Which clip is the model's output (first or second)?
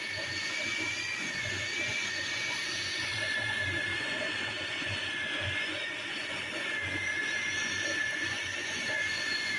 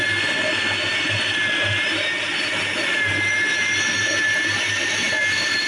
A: first